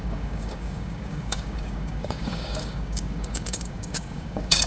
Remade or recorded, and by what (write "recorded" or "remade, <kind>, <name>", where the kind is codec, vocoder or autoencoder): remade, codec, DAC